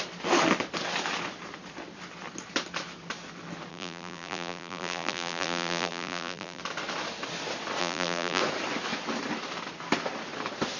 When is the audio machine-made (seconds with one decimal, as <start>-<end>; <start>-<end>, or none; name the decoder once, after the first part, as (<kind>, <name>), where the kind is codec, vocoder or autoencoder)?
3.7-6.6 (vocoder, BigVGAN v2); 7.8-8.4